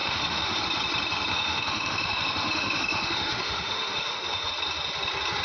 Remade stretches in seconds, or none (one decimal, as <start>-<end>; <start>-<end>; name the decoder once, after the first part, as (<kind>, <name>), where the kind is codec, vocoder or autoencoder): 0.0-0.6 (autoencoder, DAC-VAE); 1.3-4.5